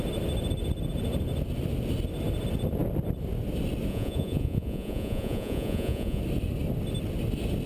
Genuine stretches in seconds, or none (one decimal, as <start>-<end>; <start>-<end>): 0.0-3.9; 6.2-7.7